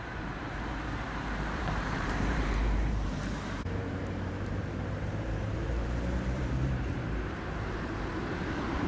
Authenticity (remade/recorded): remade